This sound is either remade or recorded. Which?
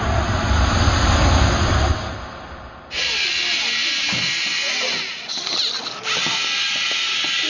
recorded